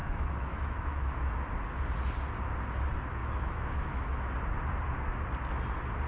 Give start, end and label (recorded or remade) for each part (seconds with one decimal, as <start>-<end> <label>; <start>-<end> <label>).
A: 0.0-1.3 remade; 1.3-3.2 recorded; 3.2-4.0 remade; 4.0-6.1 recorded

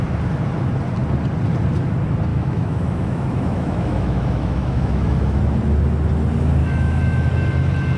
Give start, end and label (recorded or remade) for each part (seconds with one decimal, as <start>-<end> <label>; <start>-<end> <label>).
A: 0.0-2.3 recorded; 2.3-5.4 remade; 5.4-6.6 recorded; 6.6-7.3 remade; 7.3-8.0 recorded

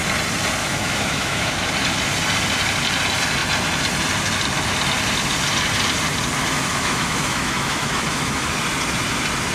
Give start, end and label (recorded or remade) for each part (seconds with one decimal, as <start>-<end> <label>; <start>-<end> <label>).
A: 0.0-0.6 recorded; 0.6-1.7 remade; 1.7-6.4 recorded; 6.4-8.6 remade; 8.6-9.5 recorded